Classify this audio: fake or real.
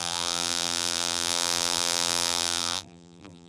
fake